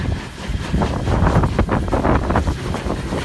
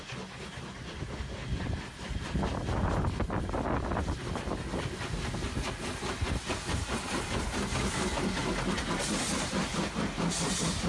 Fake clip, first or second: first